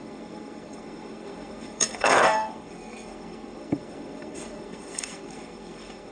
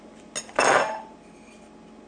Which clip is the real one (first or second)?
second